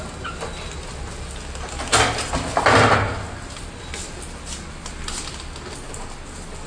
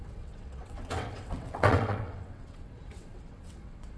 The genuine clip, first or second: first